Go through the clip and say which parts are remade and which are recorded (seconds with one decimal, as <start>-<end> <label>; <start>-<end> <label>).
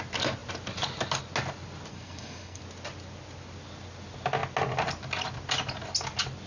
0.0-1.9 recorded; 1.9-2.6 remade; 2.6-6.5 recorded